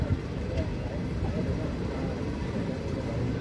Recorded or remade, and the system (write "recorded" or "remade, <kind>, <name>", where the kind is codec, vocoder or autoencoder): recorded